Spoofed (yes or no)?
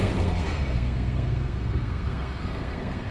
yes